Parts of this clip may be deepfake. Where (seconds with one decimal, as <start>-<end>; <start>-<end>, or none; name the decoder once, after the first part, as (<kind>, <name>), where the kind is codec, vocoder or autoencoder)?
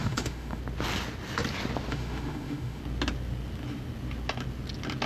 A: 0.0-0.6 (autoencoder, DAC-VAE); 1.9-2.8